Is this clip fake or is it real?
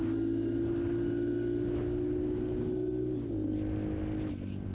real